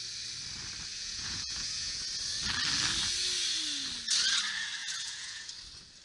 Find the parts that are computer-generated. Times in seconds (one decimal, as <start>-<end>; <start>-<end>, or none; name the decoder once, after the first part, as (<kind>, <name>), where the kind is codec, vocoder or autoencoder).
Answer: 0.9-2.1 (vocoder, Vocos); 4.8-5.5